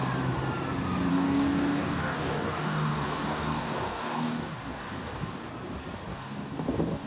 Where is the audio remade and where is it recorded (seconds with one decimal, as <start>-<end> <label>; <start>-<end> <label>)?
0.0-1.1 recorded; 1.1-5.4 remade; 5.4-6.1 recorded; 6.1-7.1 remade